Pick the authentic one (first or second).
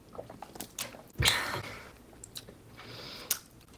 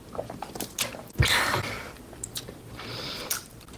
first